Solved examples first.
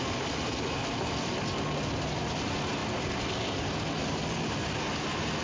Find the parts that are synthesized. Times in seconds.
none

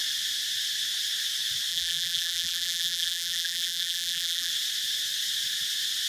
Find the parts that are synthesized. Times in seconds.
1.7-4.5 (vocoder, BigVGAN v2)

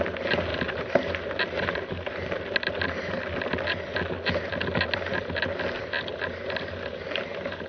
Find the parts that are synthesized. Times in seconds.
0.5-2.4 (vocoder, BigVGAN v2)

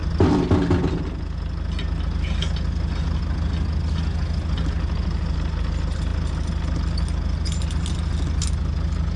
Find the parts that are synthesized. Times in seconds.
none

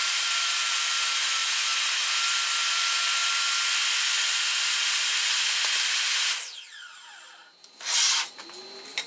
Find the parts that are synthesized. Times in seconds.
0.0-1.4 (vocoder, BigVGAN v2); 2.7-3.2; 3.8-9.1

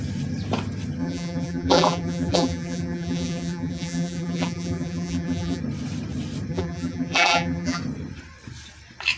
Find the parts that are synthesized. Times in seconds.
1.0-5.6 (vocoder, BigVGAN v2); 6.5-7.8

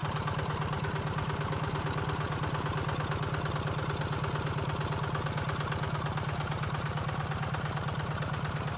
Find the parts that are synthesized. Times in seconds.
none